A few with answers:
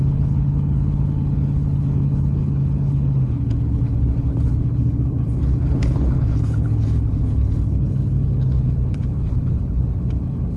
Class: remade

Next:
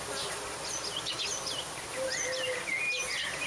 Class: recorded